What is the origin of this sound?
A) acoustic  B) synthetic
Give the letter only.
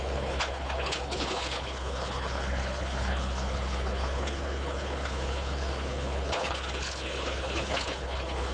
B